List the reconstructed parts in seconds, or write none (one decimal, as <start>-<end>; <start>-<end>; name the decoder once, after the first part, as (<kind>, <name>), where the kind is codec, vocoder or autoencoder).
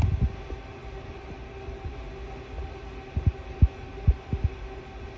none